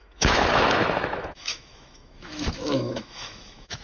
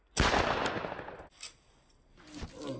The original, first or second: second